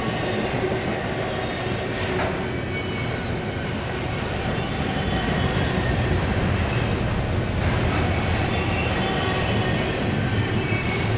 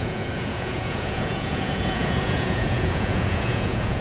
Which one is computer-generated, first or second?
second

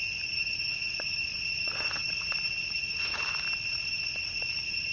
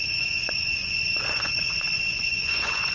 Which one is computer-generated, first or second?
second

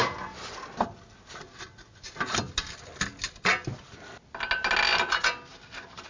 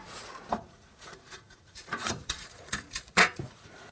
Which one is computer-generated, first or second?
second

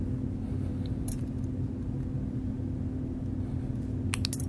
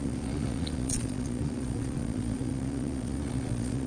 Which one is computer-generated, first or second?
second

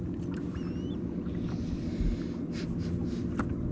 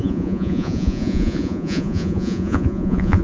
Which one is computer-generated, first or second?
second